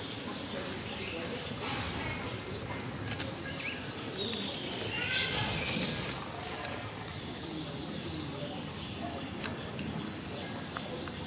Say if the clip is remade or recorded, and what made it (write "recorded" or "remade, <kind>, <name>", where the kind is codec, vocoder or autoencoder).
recorded